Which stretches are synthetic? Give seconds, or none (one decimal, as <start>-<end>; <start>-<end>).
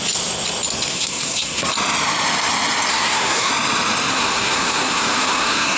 0.9-1.7; 2.9-3.5; 4.1-5.8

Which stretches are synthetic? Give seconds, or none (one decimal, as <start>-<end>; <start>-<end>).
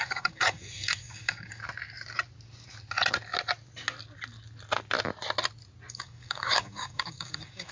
0.0-1.6; 5.9-7.7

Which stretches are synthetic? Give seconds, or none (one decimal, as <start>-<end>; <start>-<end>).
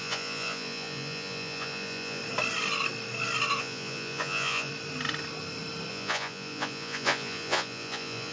0.0-2.2; 3.6-4.7; 5.9-8.3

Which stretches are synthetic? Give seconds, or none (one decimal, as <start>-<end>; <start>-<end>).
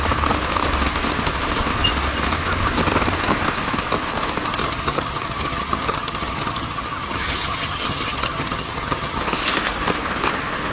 4.6-9.2